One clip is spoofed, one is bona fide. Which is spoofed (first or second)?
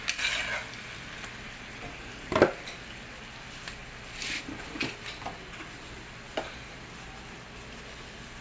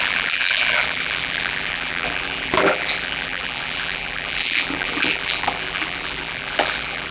second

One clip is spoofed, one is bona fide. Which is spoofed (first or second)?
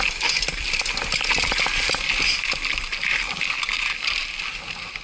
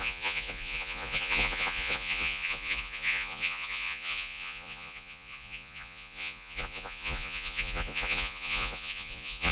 second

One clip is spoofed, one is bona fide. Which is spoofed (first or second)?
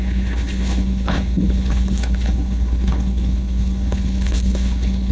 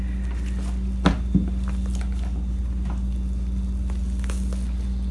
first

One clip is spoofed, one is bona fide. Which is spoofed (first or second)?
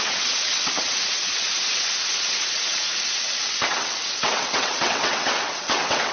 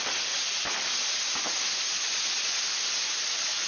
first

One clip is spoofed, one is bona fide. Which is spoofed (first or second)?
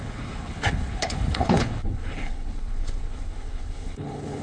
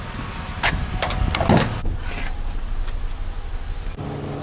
first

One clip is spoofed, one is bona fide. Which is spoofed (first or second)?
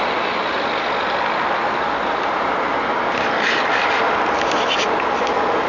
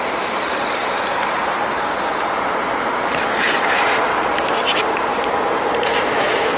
second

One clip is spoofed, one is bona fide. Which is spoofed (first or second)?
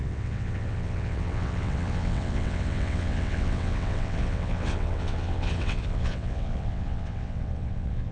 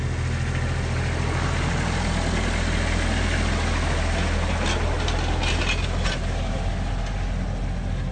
first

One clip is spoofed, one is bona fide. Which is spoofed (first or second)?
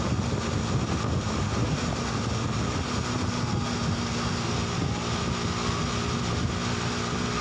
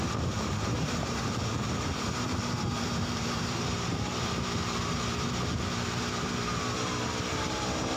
second